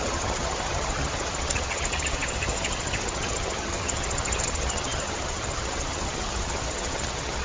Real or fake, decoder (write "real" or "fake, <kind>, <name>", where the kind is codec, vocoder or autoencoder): fake, vocoder, HiFi-GAN